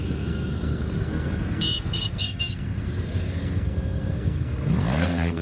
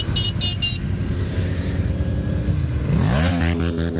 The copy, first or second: first